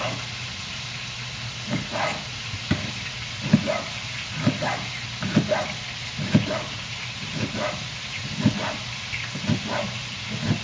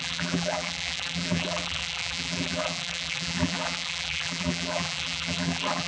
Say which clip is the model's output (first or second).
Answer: second